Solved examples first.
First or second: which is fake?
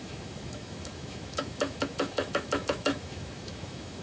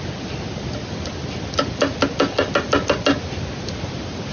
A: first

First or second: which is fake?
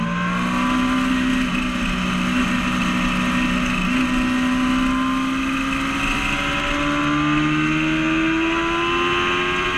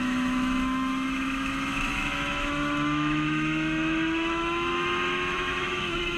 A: second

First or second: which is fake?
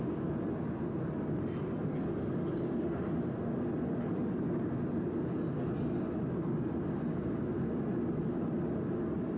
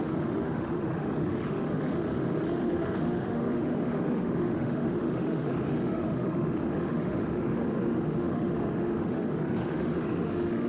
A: second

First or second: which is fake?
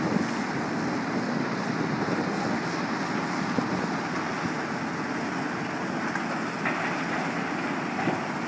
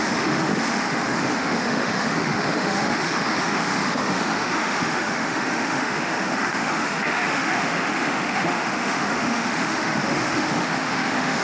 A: second